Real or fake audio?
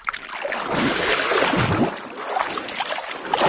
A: real